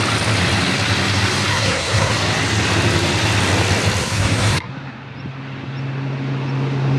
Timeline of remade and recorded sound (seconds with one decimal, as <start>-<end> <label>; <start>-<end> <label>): 0.0-1.5 recorded; 1.5-2.1 remade; 2.1-4.0 recorded; 4.0-4.7 remade; 4.7-7.0 recorded